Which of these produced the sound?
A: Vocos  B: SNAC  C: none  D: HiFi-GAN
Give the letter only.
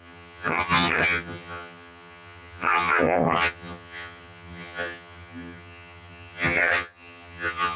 D